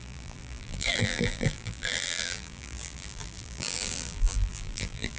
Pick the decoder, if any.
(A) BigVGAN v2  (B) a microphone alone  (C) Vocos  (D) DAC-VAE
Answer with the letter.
A